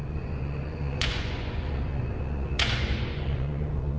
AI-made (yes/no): yes